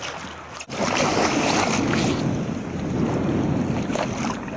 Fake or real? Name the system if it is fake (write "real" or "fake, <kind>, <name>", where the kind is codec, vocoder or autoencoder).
real